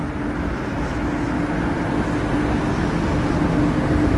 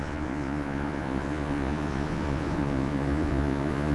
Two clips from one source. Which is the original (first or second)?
first